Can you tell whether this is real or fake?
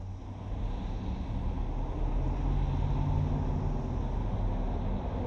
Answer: real